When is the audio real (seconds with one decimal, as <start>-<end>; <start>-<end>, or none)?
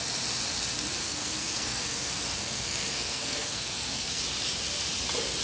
0.0-1.0; 4.2-5.4